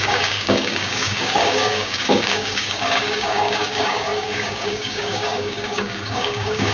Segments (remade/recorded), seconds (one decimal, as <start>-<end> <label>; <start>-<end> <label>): 0.0-6.7 remade